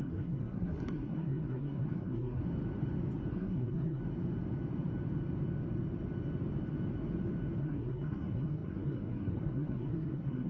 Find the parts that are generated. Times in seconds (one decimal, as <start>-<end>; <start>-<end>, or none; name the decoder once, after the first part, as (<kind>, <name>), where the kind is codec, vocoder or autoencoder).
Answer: 0.0-2.4 (codec, SNAC); 3.3-4.0; 7.6-10.5